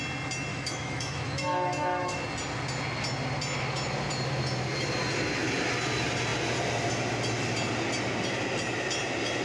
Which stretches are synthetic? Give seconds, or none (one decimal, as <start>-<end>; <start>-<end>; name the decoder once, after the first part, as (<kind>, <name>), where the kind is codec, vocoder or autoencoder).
0.5-2.2 (autoencoder, DAC-VAE)